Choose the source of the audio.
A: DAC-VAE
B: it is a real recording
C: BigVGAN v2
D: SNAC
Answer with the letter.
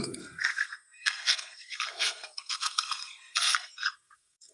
D